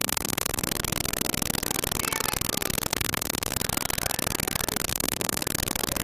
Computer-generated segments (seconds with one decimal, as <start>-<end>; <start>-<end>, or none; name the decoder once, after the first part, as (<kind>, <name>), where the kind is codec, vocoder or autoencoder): 0.0-0.6 (codec, SNAC); 2.9-3.5; 4.9-5.4